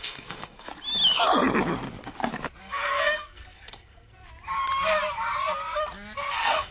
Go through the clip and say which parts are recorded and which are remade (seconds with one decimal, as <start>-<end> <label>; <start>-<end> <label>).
0.0-0.7 remade; 0.7-2.6 recorded; 2.6-4.2 remade; 4.2-6.3 recorded; 6.3-6.7 remade